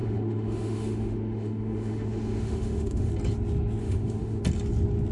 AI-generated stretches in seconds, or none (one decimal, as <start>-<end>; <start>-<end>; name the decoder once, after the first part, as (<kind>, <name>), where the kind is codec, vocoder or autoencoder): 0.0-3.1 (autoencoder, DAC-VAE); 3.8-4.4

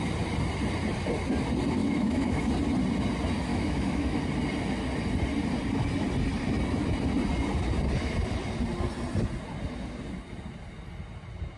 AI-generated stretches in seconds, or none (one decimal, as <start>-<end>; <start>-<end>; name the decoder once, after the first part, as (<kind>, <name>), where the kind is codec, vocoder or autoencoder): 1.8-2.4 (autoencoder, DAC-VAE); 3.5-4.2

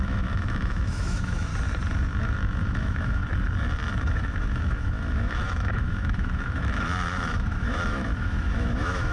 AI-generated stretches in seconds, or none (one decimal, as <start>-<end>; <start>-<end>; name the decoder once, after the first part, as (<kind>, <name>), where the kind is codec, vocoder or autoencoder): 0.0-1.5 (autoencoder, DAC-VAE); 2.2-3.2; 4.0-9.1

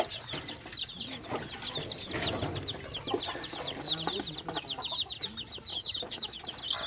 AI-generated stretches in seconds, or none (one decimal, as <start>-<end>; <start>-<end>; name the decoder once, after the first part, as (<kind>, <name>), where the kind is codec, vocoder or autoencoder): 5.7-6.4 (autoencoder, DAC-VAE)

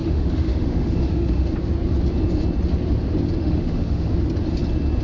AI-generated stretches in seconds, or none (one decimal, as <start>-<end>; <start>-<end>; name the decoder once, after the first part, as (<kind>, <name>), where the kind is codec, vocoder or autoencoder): 0.0-1.5 (autoencoder, DAC-VAE); 3.4-4.1

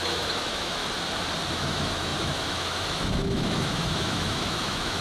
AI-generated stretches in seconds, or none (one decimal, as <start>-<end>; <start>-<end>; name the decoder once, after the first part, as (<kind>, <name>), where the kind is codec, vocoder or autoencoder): 0.0-0.8 (autoencoder, DAC-VAE); 1.5-5.0